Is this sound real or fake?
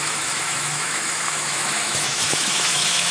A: fake